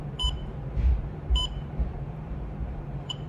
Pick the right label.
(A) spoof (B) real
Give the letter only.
A